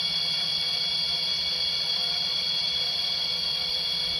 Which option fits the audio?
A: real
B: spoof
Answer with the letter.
B